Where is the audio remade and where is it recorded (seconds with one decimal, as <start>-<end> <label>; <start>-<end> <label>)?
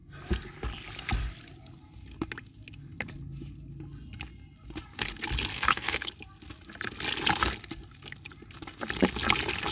0.0-5.5 recorded; 5.5-6.1 remade; 6.1-9.7 recorded